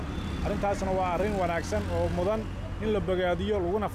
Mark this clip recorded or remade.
recorded